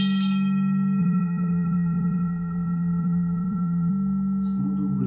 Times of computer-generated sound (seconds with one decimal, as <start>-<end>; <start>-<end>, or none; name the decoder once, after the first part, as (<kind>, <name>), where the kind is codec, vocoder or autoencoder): 1.0-3.9 (vocoder, Vocos)